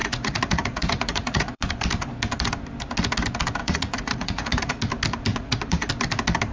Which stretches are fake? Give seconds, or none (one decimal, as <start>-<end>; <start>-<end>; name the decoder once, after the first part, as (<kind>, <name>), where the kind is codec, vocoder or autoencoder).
0.0-1.7 (vocoder, Vocos); 3.6-4.8; 5.3-5.9